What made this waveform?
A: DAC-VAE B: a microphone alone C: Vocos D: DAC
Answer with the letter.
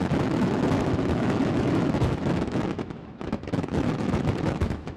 A